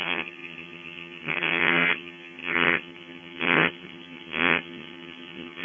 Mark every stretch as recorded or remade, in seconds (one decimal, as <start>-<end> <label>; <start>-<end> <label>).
0.0-5.6 remade